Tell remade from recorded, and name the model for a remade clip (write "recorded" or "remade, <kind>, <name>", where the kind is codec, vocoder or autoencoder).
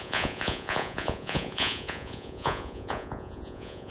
remade, vocoder, Vocos